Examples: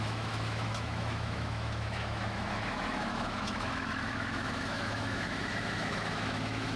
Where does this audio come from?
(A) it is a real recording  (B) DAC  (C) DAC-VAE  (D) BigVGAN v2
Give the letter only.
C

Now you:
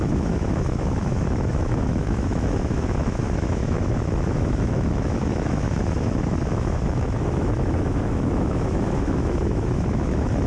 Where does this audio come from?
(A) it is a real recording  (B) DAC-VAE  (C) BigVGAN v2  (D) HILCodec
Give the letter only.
B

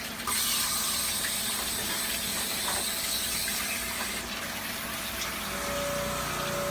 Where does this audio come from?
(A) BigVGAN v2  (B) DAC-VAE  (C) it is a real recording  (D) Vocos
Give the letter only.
C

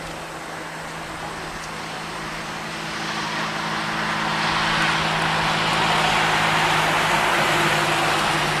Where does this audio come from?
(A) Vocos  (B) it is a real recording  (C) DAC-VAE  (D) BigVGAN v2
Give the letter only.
B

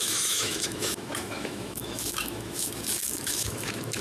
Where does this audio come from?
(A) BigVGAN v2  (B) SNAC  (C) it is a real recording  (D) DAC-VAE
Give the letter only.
D